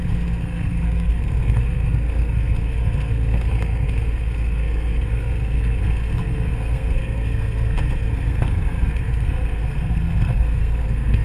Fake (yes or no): yes